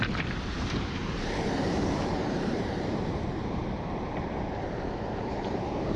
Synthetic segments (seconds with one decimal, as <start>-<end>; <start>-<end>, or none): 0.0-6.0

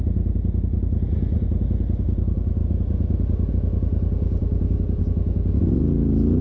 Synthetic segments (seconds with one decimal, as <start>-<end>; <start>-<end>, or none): 4.4-5.0

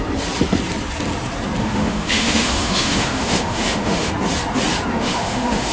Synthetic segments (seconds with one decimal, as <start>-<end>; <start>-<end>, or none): 1.6-4.1; 4.9-5.7

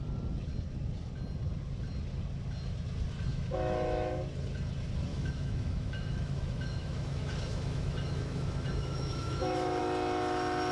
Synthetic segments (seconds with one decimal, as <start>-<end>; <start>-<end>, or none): 3.3-4.2; 5.1-9.8